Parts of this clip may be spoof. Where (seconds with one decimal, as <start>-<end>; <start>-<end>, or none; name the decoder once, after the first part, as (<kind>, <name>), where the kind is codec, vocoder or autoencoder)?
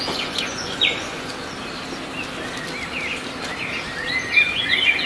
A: 0.0-1.3 (vocoder, Vocos); 4.4-5.1